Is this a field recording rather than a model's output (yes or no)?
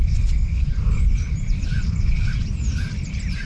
no